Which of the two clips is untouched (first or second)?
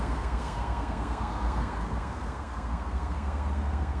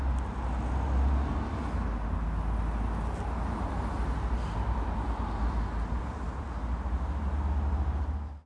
second